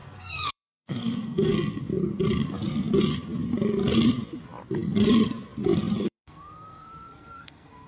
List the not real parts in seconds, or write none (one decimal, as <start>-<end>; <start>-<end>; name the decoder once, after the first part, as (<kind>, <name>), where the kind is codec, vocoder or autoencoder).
0.0-1.8 (codec, SNAC); 6.0-7.9

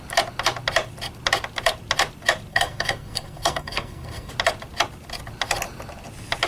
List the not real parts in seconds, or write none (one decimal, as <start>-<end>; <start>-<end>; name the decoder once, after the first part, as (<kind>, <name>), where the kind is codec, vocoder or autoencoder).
2.5-4.3 (codec, SNAC)